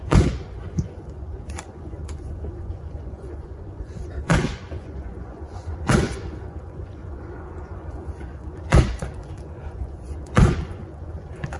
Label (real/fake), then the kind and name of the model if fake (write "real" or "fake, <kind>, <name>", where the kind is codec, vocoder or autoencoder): fake, vocoder, Vocos